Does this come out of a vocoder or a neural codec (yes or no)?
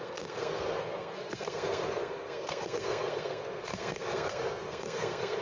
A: yes